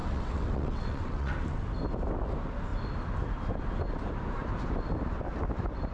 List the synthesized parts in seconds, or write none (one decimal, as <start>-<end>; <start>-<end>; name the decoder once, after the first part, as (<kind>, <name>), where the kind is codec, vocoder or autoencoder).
0.0-1.3 (vocoder, WaveNeXt)